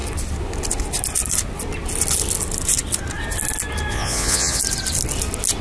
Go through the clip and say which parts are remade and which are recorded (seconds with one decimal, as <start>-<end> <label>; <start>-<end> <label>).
0.0-3.9 recorded; 3.9-4.6 remade; 4.6-5.6 recorded